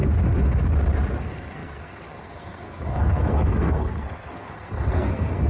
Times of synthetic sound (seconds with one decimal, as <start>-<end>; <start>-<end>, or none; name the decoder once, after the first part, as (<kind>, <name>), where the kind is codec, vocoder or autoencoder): 1.2-5.5 (codec, SNAC)